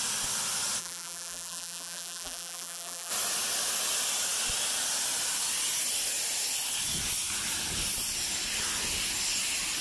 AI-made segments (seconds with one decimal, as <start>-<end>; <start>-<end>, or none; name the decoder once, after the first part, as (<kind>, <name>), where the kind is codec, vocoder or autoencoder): 0.8-3.1 (vocoder, BigVGAN v2)